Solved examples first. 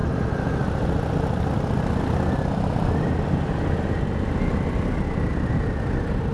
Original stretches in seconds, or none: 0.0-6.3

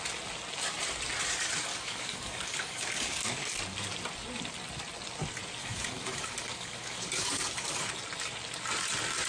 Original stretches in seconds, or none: 0.0-1.7; 3.6-5.6; 7.9-9.3

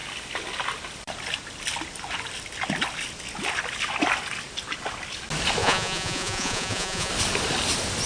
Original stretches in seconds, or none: 0.0-5.6; 7.1-8.1

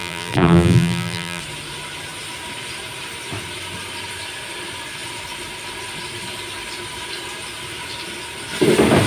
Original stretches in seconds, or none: 1.4-9.1

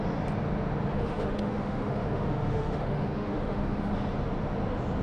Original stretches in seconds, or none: 0.0-0.9; 3.9-5.0